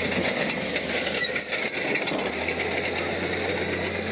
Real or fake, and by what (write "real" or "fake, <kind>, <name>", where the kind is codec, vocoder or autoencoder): real